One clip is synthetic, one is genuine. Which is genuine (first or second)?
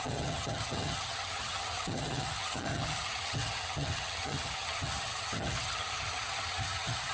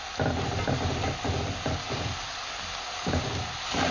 second